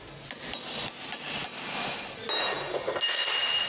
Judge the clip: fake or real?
real